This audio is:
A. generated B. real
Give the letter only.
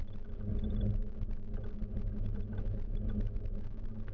B